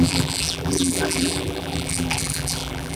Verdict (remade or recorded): remade